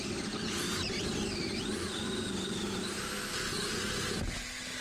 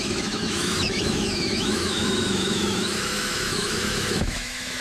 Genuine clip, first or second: first